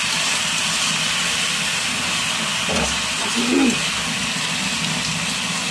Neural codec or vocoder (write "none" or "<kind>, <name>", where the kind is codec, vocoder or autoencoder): none